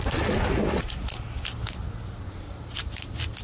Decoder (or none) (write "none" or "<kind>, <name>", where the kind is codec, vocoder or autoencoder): none